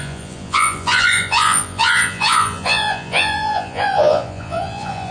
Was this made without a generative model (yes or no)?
no